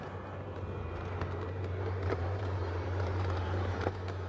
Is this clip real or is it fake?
fake